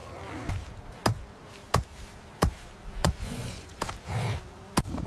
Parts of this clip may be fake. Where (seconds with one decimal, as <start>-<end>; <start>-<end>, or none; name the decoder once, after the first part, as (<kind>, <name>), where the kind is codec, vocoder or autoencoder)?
3.0-3.8 (vocoder, Vocos)